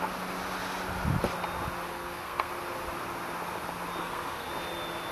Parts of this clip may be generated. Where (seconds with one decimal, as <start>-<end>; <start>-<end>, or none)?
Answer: 1.9-2.5; 4.0-4.5